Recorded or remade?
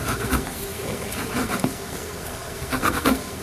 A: remade